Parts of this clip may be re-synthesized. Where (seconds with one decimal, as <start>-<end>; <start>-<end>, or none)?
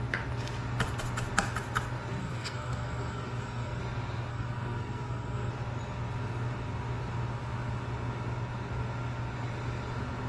2.2-3.8; 4.3-5.5